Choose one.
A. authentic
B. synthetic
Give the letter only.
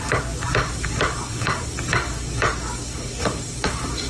B